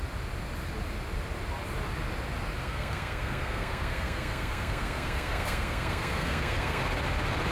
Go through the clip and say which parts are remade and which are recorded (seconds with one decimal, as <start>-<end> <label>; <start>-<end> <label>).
0.0-2.6 recorded; 2.6-6.8 remade; 6.8-7.5 recorded